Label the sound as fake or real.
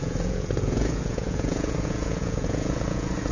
fake